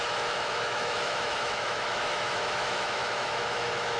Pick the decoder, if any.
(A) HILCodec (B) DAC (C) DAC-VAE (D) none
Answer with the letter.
C